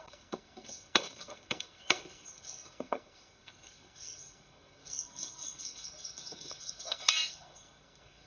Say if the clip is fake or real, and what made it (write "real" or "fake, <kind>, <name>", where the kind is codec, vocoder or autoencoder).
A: fake, codec, SNAC